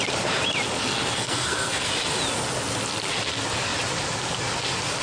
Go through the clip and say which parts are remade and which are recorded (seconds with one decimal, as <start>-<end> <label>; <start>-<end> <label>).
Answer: 0.0-0.8 recorded; 0.8-1.9 remade; 1.9-5.0 recorded